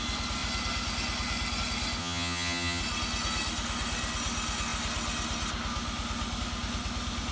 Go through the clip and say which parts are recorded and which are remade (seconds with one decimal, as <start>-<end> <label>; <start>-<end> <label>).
0.0-2.0 recorded; 2.0-2.8 remade; 2.8-7.3 recorded